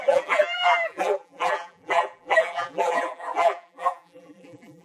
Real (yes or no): no